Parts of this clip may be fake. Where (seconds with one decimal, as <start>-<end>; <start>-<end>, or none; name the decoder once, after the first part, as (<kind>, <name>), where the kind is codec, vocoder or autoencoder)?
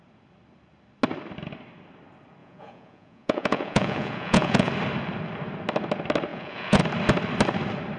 2.4-4.7 (vocoder, Vocos); 6.3-6.8